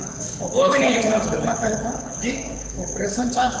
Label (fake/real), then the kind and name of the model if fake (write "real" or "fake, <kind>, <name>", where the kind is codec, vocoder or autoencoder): fake, codec, HILCodec